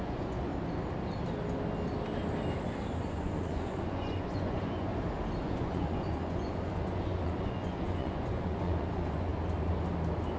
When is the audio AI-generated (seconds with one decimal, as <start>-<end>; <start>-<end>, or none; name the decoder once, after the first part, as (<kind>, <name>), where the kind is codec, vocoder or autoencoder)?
0.0-0.5 (vocoder, Vocos); 3.1-4.9; 5.4-9.3